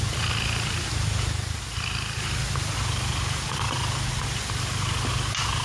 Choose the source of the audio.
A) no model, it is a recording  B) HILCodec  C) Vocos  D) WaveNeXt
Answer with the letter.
A